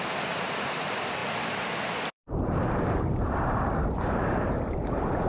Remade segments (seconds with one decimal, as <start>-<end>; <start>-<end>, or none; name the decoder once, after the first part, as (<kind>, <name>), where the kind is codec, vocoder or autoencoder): 0.0-5.3 (vocoder, BigVGAN v2)